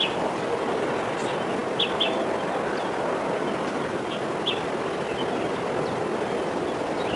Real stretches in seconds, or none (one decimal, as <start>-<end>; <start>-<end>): 0.0-7.2